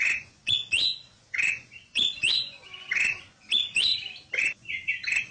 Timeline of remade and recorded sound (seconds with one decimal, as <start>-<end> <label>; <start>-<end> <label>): 0.0-3.9 remade; 3.9-4.4 recorded; 4.4-5.3 remade